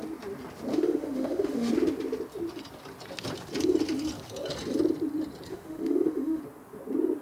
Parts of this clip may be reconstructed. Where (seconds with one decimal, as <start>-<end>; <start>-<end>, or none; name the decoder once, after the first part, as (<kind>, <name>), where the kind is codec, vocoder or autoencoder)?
0.7-1.7 (autoencoder, DAC-VAE); 5.5-6.4